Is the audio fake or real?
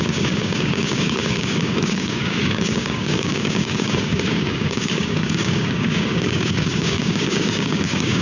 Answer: fake